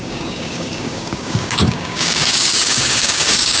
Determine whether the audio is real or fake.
fake